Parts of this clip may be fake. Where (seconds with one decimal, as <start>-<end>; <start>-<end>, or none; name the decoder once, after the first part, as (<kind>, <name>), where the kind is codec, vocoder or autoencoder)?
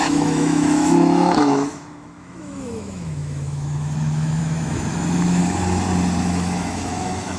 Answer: 0.0-5.4 (autoencoder, DAC-VAE); 6.2-7.4